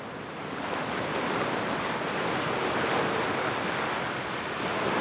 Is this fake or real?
real